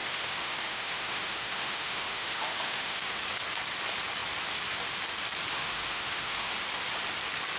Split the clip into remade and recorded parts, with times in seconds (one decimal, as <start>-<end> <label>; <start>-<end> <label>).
0.0-3.2 remade; 3.2-5.5 recorded; 5.5-6.5 remade; 6.5-7.6 recorded